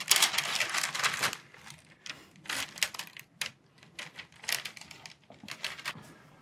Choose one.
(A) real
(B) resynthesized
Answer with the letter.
A